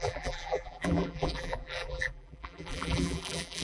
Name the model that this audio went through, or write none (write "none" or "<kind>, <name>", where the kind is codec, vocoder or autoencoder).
vocoder, BigVGAN v2